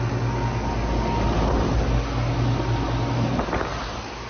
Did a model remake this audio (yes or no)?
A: no